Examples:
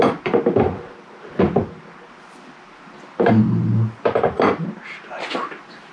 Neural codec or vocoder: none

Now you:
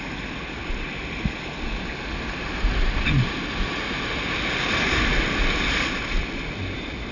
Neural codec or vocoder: none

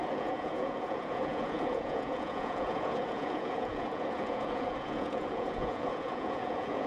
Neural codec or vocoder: vocoder, Vocos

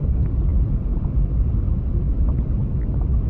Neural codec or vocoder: none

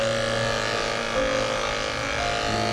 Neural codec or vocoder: none